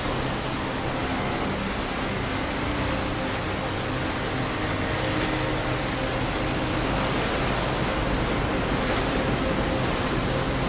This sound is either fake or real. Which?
real